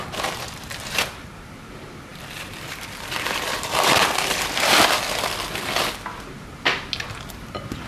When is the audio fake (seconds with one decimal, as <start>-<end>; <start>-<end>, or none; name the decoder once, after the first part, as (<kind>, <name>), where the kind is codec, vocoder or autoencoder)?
2.1-5.7 (vocoder, BigVGAN v2)